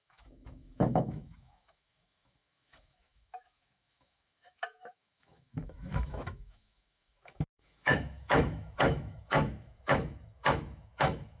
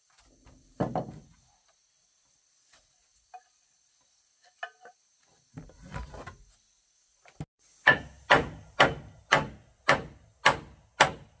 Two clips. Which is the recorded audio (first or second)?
second